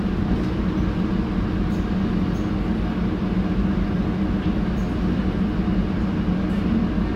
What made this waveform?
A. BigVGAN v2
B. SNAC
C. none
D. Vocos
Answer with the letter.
C